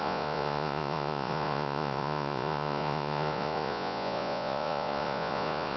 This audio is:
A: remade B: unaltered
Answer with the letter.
A